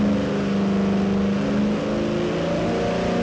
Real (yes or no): yes